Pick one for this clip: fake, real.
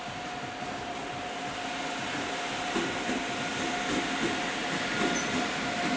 real